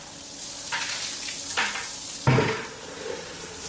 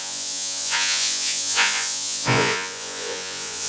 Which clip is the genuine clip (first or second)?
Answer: first